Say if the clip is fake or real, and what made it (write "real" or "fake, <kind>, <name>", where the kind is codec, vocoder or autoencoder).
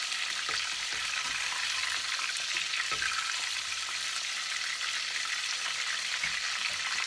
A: real